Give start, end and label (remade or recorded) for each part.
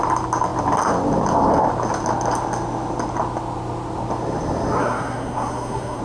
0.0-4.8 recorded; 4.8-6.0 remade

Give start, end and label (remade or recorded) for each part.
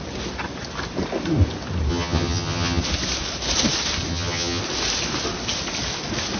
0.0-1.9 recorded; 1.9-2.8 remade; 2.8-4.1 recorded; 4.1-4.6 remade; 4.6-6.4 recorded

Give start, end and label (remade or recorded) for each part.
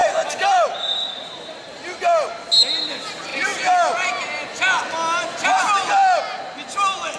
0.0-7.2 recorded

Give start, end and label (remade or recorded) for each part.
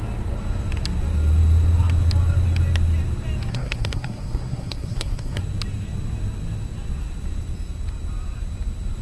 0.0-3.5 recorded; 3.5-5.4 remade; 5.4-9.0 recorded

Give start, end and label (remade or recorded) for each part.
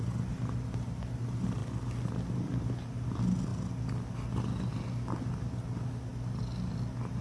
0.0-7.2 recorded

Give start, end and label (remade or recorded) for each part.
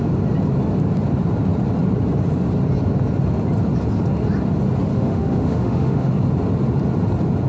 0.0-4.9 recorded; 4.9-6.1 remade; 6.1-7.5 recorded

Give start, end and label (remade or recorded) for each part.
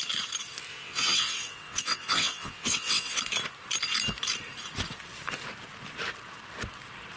0.0-0.7 recorded; 0.7-3.2 remade; 3.2-7.2 recorded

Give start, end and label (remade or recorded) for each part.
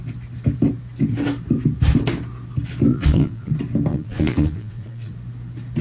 0.0-2.9 recorded; 2.9-3.5 remade; 3.5-3.9 recorded; 3.9-5.1 remade; 5.1-5.8 recorded